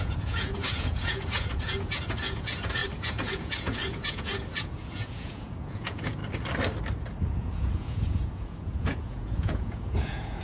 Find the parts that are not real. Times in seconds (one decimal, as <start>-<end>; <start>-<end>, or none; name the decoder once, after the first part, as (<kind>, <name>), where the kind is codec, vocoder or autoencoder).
0.0-6.2 (vocoder, Vocos); 7.2-10.4